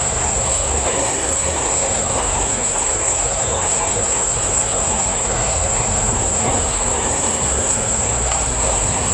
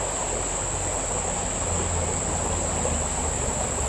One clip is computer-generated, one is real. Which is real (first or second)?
second